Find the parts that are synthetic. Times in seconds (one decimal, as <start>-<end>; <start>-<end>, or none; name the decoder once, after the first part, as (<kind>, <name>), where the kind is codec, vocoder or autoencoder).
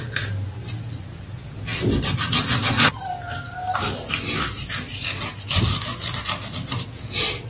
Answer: none